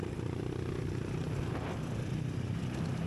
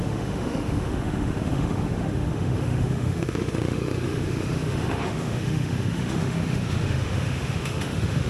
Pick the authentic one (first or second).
first